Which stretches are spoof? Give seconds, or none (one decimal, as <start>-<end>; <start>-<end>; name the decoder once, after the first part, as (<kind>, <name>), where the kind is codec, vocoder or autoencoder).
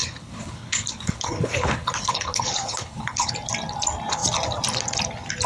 0.0-3.3 (codec, HILCodec)